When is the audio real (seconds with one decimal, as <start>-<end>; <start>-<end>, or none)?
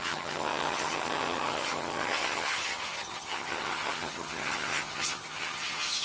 none